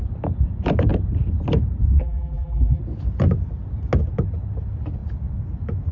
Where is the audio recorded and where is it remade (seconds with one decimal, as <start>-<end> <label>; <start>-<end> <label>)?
0.0-2.0 recorded; 2.0-2.8 remade; 2.8-5.9 recorded